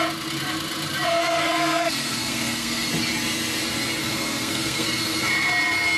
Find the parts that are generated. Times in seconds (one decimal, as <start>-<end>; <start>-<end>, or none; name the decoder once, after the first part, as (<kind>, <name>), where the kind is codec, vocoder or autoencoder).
1.2-2.9 (codec, SNAC); 4.0-5.2